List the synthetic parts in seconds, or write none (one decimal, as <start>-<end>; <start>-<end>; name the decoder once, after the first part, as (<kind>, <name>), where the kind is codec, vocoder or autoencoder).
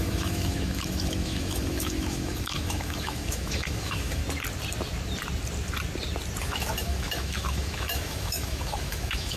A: 0.0-4.2 (autoencoder, DAC-VAE); 6.4-9.4